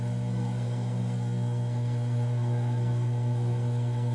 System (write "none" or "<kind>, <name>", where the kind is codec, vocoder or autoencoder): codec, SNAC